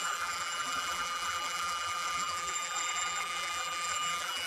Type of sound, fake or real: fake